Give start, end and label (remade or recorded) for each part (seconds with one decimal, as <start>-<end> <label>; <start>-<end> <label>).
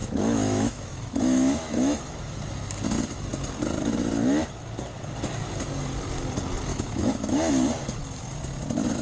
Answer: 0.0-2.4 remade; 2.4-6.7 recorded; 6.7-7.5 remade; 7.5-9.0 recorded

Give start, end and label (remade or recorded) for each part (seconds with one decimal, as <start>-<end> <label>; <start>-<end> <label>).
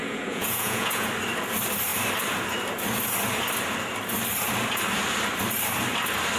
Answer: 0.0-1.1 remade; 1.1-6.4 recorded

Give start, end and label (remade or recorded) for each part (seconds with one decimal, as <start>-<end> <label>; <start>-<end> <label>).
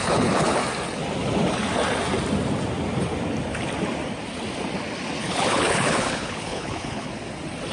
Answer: 0.0-0.6 remade; 0.6-5.2 recorded; 5.2-7.1 remade; 7.1-7.7 recorded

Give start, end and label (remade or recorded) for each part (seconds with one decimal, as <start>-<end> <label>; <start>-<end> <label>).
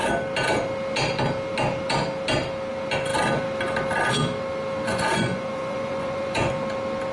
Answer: 0.0-4.9 recorded; 4.9-6.5 remade; 6.5-7.1 recorded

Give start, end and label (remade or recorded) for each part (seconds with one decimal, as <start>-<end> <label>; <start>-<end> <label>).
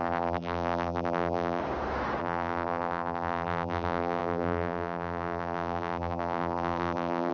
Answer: 0.0-1.6 remade; 1.6-2.2 recorded; 2.2-7.3 remade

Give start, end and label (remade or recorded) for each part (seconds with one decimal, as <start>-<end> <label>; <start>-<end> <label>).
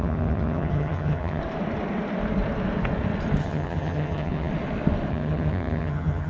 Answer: 0.0-1.4 remade; 1.4-3.4 recorded; 3.4-4.5 remade; 4.5-5.1 recorded; 5.1-6.3 remade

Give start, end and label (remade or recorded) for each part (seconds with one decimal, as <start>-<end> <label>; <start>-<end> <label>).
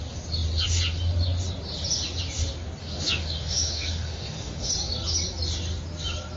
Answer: 0.0-2.8 recorded; 2.8-4.7 remade; 4.7-6.4 recorded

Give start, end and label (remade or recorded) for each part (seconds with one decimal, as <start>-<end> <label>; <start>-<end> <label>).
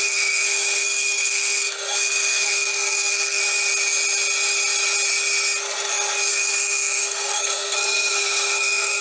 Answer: 0.0-3.4 remade; 3.4-6.3 recorded; 6.3-9.0 remade